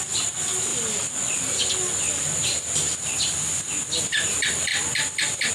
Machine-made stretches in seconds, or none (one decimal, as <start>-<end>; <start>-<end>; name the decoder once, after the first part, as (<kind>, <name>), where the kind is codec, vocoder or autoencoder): none